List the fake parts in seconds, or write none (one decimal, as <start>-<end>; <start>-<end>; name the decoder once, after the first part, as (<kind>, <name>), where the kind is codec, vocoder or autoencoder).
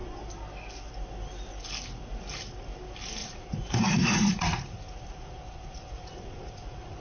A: 3.2-7.0 (vocoder, Vocos)